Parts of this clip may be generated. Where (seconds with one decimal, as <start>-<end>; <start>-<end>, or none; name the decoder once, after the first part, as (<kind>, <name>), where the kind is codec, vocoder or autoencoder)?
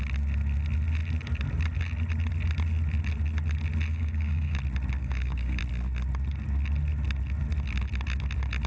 3.9-4.6 (codec, DAC); 5.0-5.6